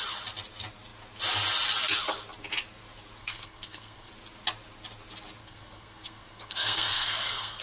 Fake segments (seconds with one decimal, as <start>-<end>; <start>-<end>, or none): 3.2-4.1; 5.4-7.6